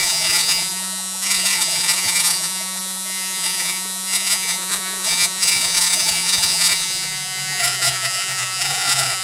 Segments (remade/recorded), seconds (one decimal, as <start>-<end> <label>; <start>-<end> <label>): 0.0-9.2 remade